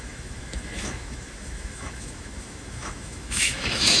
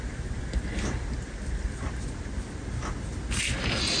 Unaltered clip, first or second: second